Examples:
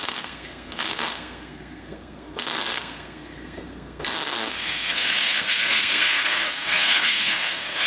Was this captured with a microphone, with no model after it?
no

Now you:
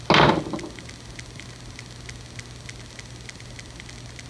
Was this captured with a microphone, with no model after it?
yes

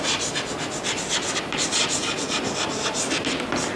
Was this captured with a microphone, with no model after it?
yes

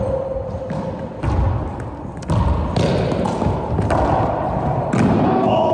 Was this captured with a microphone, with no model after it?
yes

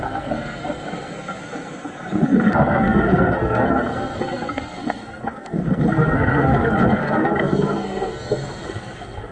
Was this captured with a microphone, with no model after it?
no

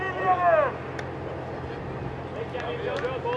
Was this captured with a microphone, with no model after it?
yes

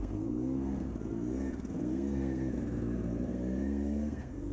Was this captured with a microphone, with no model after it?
no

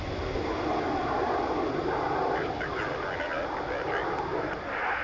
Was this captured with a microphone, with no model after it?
yes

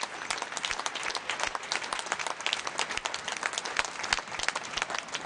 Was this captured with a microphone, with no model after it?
yes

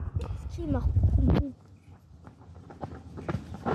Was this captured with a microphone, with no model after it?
yes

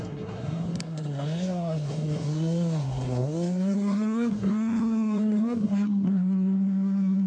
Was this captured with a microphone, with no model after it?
no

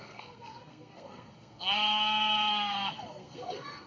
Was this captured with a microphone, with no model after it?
no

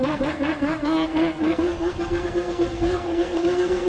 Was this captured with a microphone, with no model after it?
no